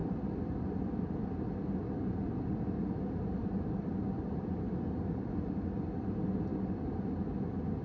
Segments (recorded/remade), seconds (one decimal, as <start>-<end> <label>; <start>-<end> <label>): 0.0-1.2 remade; 1.2-3.4 recorded; 3.4-5.4 remade; 5.4-6.5 recorded; 6.5-7.0 remade; 7.0-7.8 recorded